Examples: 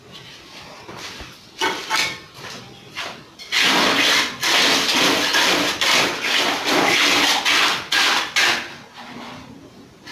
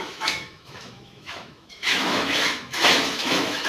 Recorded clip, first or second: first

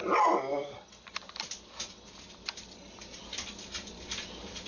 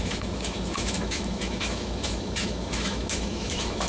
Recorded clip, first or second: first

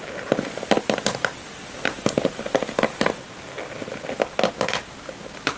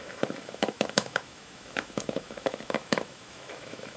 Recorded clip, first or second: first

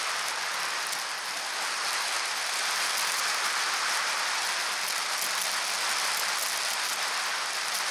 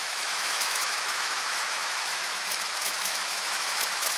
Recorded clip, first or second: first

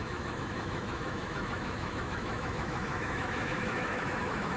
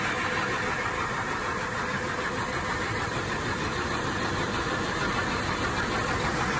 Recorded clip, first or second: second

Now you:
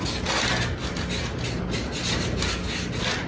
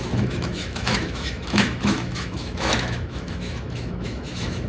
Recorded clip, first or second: first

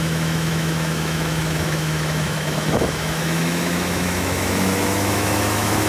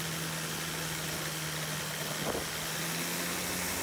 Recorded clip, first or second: second